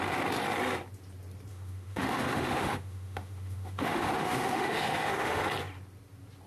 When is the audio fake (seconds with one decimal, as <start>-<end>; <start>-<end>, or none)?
1.5-5.4